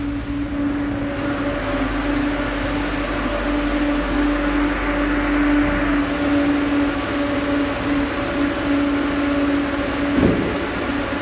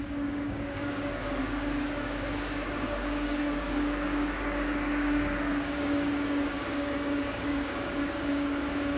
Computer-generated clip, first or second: second